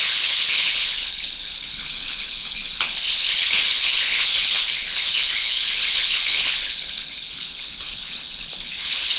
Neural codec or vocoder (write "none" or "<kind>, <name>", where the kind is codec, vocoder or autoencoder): codec, HILCodec